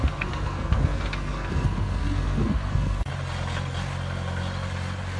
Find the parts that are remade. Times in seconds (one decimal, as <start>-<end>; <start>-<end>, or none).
0.0-3.1